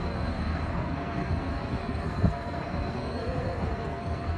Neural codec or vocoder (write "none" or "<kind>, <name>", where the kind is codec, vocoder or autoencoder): codec, SNAC